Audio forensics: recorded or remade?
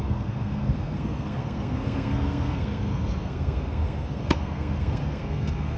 remade